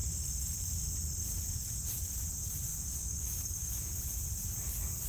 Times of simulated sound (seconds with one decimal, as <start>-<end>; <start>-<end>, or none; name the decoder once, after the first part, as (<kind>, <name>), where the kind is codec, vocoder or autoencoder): 2.7-4.0 (autoencoder, DAC-VAE)